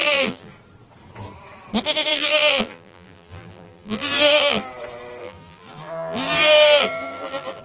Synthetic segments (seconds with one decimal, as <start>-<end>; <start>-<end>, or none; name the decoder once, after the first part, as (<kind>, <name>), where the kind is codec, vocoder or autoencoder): 0.0-0.5 (vocoder, BigVGAN v2); 2.1-4.7; 5.2-7.6

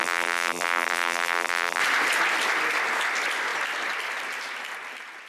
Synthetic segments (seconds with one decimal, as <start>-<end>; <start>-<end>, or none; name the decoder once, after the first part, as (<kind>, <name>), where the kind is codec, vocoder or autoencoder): 0.0-1.8 (vocoder, BigVGAN v2)